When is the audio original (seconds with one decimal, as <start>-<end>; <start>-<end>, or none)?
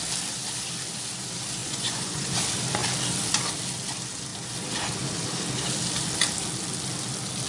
0.0-1.6; 2.3-7.5